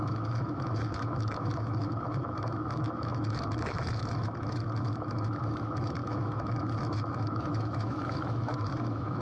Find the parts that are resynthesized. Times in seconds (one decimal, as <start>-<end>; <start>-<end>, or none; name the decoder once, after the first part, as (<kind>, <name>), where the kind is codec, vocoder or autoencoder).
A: 0.0-9.2 (autoencoder, DAC-VAE)